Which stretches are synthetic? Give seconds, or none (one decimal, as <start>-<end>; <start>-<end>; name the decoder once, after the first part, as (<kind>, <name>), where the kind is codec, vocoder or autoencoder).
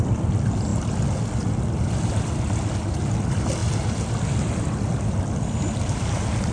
none